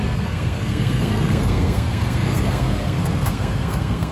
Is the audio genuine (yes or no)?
no